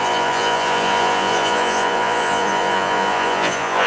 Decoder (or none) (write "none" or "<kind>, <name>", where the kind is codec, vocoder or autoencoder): vocoder, Vocos